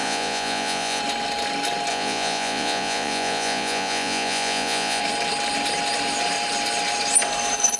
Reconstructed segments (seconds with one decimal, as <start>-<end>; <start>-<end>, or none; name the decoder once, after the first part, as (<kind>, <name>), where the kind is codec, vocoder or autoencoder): 0.0-1.0 (vocoder, Vocos); 1.9-5.0